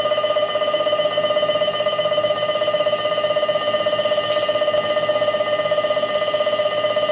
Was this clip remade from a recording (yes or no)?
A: no